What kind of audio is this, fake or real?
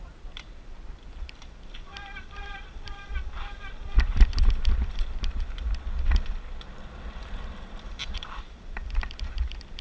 fake